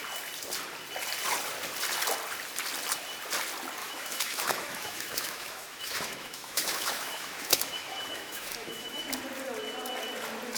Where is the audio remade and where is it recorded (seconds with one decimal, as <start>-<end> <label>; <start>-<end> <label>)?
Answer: 0.0-3.8 recorded; 3.8-9.0 remade; 9.0-10.6 recorded